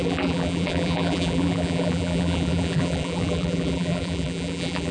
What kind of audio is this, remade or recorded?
remade